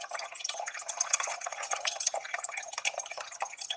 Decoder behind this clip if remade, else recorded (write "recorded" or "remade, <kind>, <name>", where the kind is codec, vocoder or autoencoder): remade, vocoder, HiFi-GAN